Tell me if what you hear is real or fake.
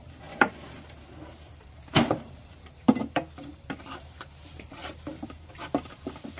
fake